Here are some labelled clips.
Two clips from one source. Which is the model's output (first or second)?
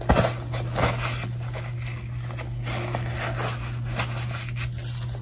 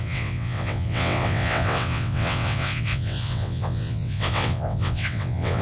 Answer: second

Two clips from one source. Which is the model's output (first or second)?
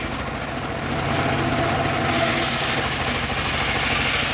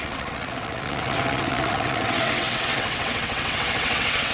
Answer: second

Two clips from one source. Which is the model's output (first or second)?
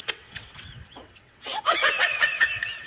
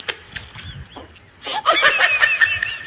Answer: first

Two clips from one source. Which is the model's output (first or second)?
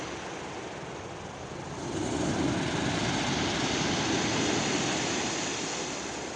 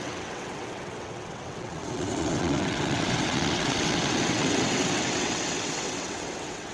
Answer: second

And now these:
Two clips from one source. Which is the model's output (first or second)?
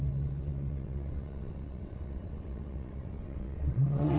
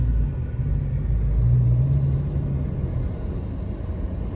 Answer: first